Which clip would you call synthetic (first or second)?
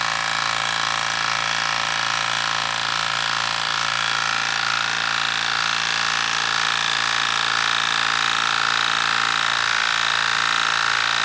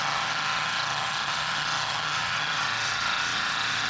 second